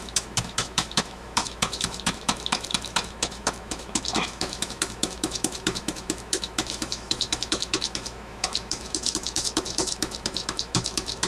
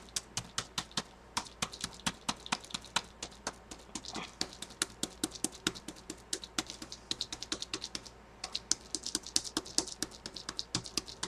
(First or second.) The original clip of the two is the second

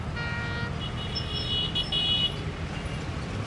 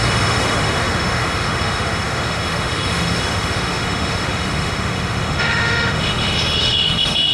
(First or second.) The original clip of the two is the first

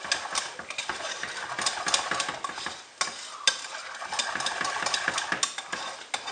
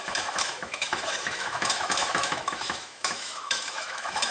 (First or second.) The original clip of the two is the first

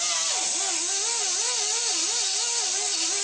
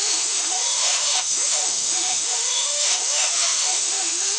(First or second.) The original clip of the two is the first